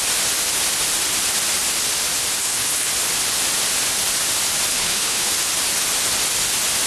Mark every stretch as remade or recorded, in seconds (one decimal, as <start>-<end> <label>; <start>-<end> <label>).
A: 0.0-2.4 recorded; 2.4-2.9 remade; 2.9-4.7 recorded; 4.7-5.3 remade; 5.3-6.9 recorded